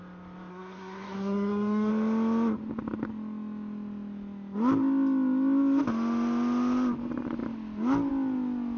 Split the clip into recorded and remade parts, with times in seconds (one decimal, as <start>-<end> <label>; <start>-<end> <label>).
0.0-0.5 recorded; 0.5-1.9 remade; 1.9-8.8 recorded